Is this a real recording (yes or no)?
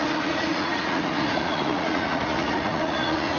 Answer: no